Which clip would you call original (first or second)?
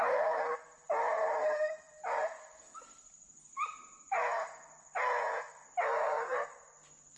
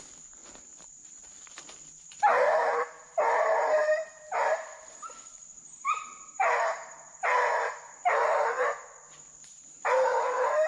first